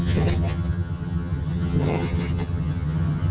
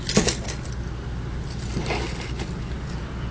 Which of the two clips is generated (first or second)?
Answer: first